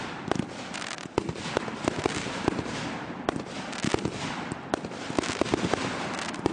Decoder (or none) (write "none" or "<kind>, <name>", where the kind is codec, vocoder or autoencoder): none